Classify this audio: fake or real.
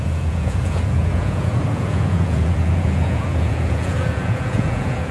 fake